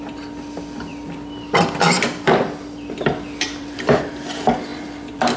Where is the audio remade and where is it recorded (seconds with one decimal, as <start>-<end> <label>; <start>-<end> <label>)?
0.0-0.9 recorded; 0.9-4.1 remade; 4.1-4.7 recorded; 4.7-5.4 remade